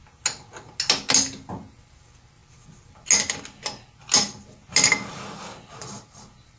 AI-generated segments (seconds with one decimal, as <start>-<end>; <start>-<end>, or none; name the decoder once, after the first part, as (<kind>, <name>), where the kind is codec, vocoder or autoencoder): 5.5-6.1 (vocoder, BigVGAN v2)